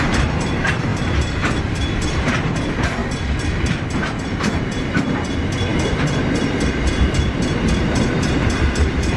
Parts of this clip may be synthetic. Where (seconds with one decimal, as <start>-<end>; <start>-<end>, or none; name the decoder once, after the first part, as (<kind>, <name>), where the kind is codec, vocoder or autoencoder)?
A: 0.0-0.9 (vocoder, BigVGAN v2); 1.6-3.0; 3.8-9.2